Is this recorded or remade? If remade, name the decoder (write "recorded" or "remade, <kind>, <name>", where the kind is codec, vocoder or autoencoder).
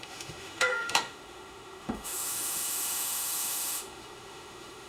remade, autoencoder, DAC-VAE